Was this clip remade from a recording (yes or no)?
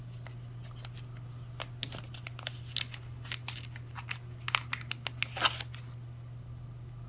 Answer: no